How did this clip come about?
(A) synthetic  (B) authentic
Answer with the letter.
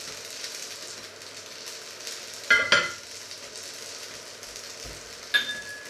B